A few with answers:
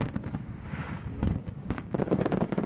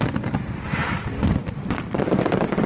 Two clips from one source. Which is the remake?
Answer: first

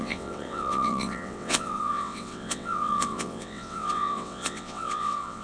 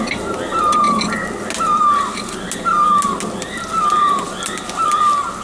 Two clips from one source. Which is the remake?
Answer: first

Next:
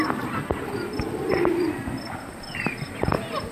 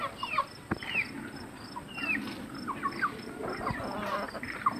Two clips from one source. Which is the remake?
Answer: second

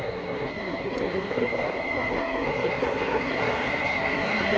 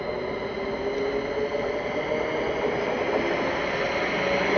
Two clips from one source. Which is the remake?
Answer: first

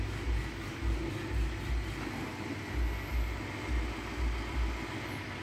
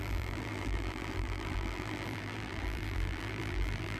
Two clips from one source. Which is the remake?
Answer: second